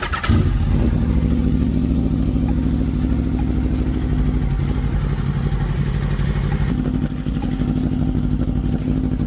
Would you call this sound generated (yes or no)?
no